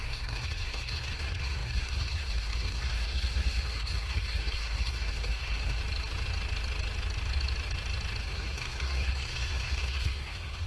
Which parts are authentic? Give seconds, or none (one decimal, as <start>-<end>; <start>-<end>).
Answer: 5.8-8.2